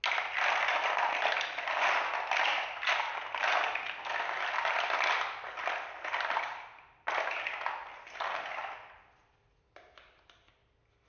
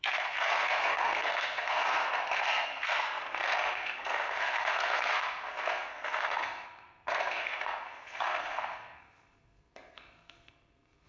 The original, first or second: first